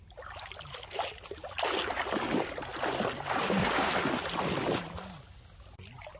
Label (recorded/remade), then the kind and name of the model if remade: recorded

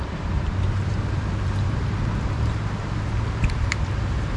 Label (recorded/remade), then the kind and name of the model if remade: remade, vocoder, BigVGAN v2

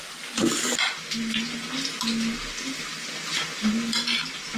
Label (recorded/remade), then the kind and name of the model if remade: recorded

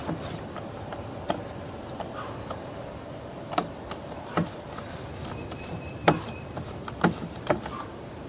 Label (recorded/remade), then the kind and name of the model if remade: remade, vocoder, BigVGAN v2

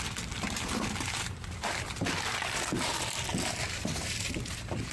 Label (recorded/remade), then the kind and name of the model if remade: recorded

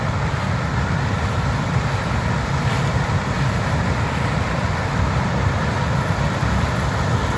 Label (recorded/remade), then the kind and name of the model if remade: remade, vocoder, BigVGAN v2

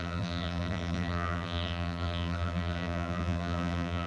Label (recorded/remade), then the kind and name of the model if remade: remade, vocoder, BigVGAN v2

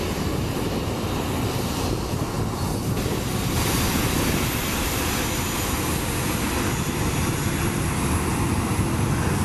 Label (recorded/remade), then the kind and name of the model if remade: recorded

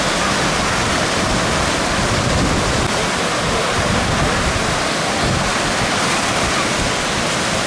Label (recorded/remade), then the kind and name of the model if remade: recorded